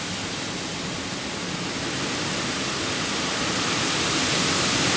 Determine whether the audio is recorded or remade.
recorded